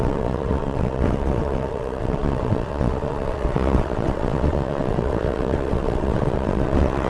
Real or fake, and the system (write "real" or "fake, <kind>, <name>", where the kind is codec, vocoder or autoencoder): fake, vocoder, WaveNeXt